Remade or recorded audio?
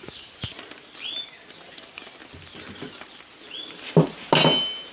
recorded